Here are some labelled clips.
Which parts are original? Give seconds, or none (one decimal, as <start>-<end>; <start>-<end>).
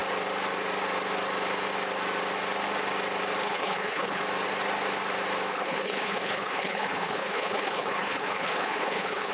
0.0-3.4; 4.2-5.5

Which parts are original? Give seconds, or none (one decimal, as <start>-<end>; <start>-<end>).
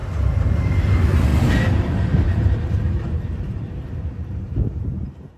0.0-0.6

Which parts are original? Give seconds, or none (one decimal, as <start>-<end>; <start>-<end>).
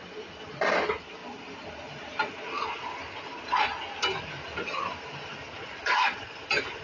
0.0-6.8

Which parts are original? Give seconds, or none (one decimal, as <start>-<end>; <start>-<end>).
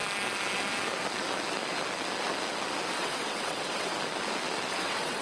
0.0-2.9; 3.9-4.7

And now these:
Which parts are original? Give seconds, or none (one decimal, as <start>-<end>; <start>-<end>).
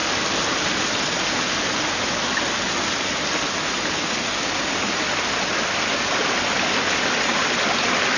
0.0-8.2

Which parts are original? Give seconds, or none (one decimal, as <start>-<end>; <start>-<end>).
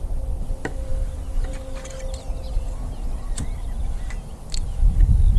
0.0-5.4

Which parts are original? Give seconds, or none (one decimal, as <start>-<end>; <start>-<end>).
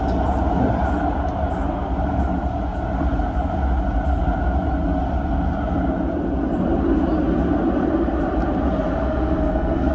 0.0-9.0